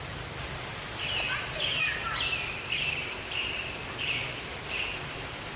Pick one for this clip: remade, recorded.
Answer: recorded